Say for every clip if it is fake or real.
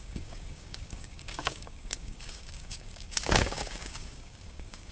fake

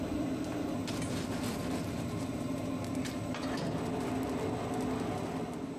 real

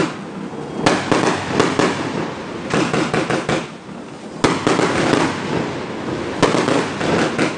real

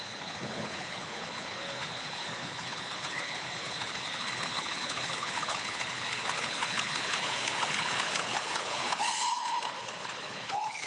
fake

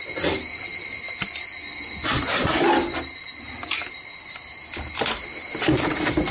real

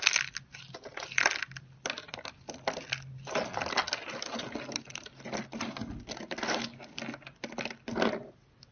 real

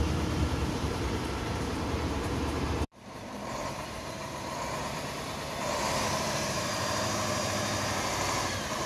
fake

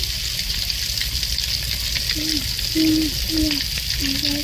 real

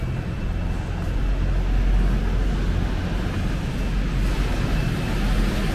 real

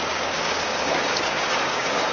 fake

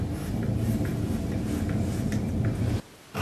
real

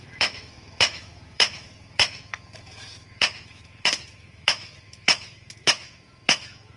fake